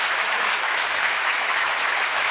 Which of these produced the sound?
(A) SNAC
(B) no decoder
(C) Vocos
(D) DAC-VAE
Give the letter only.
D